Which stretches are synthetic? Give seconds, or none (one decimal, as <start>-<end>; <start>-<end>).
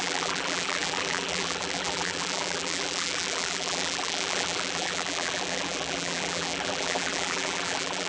0.0-8.1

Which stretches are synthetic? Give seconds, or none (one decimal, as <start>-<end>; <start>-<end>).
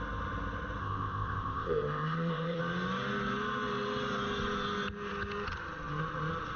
0.8-2.6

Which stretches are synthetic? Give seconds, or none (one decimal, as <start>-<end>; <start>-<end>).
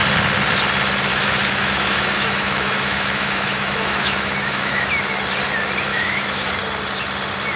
1.1-4.9; 5.9-6.5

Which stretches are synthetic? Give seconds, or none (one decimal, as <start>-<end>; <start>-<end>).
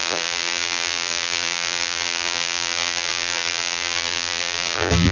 0.0-5.1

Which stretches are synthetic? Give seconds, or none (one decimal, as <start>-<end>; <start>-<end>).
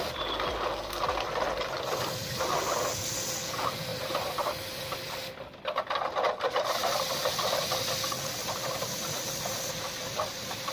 3.9-4.8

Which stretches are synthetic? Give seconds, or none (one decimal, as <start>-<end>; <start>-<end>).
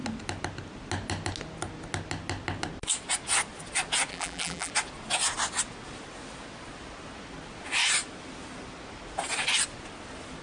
4.1-4.7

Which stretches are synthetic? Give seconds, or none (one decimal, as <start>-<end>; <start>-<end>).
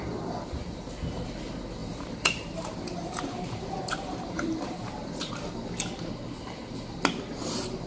1.8-5.3